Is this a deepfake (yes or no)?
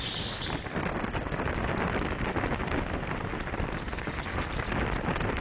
no